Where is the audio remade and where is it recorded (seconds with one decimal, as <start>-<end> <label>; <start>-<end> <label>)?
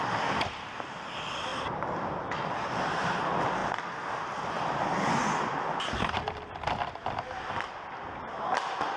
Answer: 0.0-9.0 recorded